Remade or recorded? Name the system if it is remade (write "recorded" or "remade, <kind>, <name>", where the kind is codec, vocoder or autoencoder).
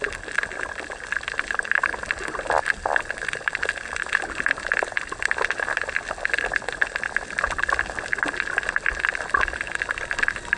recorded